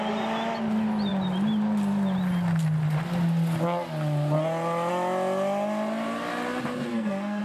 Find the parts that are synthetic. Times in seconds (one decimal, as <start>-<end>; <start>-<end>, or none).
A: 6.9-7.4